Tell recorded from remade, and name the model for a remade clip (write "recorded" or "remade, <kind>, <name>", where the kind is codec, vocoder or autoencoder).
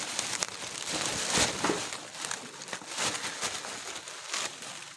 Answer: recorded